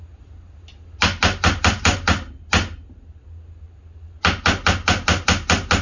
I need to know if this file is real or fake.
real